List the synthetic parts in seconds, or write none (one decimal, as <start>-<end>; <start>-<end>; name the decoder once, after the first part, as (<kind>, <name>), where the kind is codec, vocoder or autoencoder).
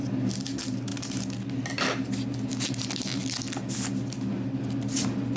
none